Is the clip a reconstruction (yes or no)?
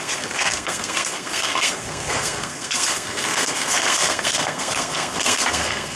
yes